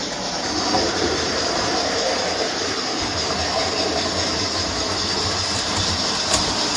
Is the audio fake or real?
fake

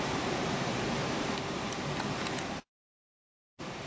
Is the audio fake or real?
fake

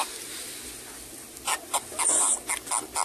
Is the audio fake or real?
real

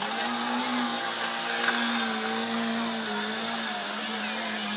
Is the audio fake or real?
real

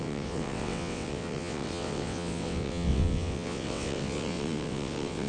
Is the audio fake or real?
fake